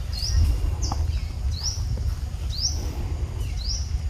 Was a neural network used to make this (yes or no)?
no